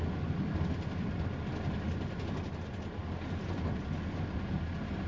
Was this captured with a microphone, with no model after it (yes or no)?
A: yes